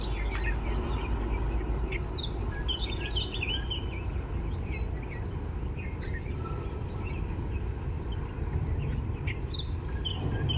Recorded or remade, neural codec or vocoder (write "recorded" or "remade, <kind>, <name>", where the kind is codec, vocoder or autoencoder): recorded